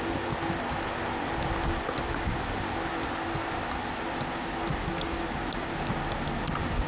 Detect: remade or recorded recorded